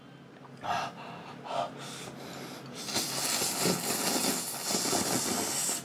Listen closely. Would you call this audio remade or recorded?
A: recorded